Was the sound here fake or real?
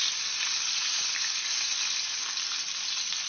real